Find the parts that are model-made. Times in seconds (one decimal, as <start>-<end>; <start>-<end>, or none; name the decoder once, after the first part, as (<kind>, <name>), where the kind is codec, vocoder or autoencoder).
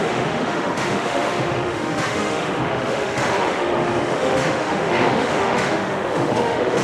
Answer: 0.0-6.8 (autoencoder, DAC-VAE)